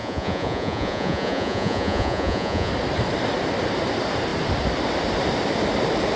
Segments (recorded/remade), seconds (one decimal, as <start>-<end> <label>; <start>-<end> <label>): 0.0-2.7 remade; 2.7-6.2 recorded